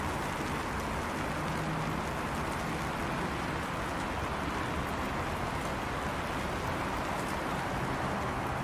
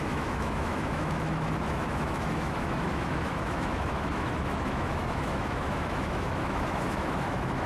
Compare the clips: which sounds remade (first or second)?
second